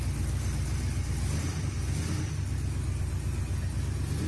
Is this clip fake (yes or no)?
no